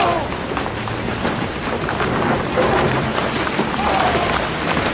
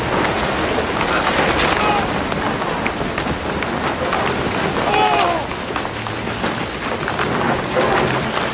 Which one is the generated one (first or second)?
first